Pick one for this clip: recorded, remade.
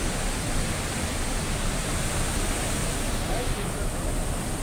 recorded